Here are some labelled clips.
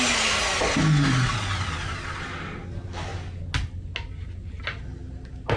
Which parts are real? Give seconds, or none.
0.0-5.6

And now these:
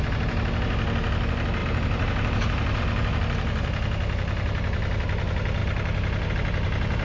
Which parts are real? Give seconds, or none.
0.0-1.6; 2.8-7.0

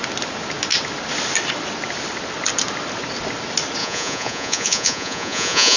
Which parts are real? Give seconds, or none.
0.0-3.8

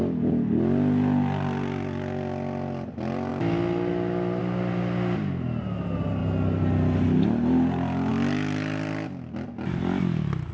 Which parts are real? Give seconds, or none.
0.0-10.5

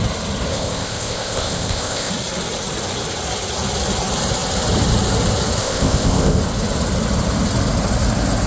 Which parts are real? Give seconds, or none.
0.0-0.5; 2.1-5.6; 6.4-8.5

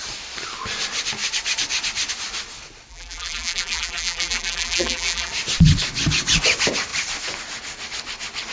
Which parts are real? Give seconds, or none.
0.0-2.9; 5.3-8.5